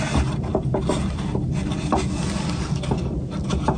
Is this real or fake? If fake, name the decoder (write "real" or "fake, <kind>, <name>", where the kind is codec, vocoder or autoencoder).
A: real